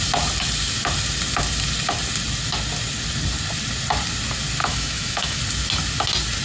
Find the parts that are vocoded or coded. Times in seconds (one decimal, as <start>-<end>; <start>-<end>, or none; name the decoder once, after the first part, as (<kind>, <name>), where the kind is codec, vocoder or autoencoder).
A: 4.6-5.4 (autoencoder, DAC-VAE)